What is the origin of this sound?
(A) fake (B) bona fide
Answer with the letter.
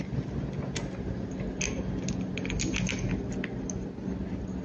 B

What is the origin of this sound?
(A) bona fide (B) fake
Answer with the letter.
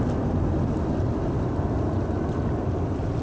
A